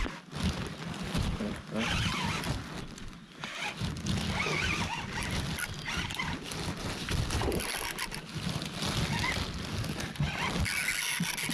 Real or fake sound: real